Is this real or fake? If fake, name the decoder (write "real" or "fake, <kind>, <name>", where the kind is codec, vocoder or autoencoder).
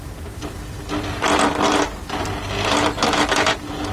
real